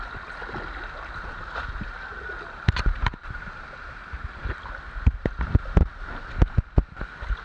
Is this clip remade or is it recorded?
recorded